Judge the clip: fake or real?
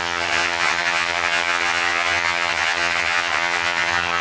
fake